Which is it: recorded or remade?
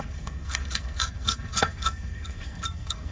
remade